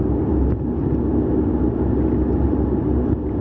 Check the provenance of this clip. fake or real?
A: real